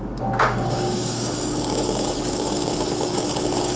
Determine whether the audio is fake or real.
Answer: fake